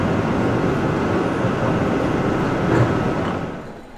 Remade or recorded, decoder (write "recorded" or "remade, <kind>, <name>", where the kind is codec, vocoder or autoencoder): recorded